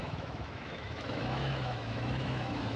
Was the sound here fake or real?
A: fake